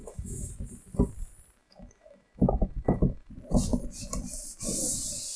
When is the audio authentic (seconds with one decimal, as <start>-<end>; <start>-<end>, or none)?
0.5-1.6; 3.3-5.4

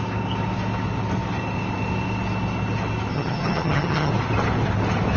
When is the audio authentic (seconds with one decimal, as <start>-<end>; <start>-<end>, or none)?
0.0-3.1; 4.1-5.2

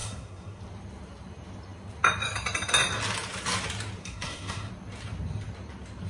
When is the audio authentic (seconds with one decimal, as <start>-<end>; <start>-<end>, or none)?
0.6-4.0; 4.7-6.1